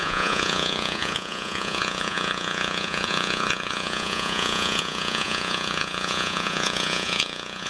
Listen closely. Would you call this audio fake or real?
fake